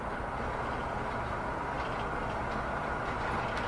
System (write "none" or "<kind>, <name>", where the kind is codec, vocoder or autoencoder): none